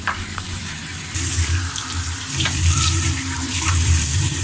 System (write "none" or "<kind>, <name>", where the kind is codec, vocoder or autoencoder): vocoder, BigVGAN v2